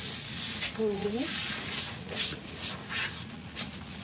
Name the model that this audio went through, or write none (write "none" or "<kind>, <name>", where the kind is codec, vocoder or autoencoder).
vocoder, Vocos